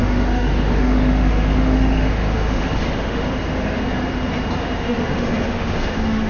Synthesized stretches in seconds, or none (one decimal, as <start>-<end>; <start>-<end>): 0.0-3.8; 4.6-6.3